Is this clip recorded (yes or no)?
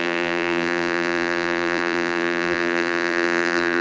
no